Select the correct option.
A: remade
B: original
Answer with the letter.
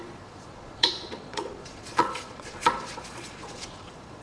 A